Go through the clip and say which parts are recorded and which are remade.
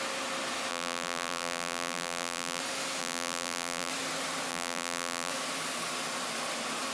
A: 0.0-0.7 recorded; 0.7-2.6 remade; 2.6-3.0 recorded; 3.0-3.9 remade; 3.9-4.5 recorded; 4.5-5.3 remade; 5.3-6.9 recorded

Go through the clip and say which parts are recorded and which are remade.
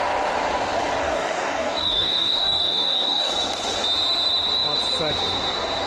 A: 0.0-1.0 recorded; 1.0-3.3 remade; 3.3-5.9 recorded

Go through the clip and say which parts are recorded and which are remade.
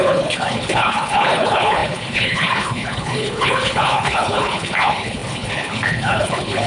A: 0.0-6.7 remade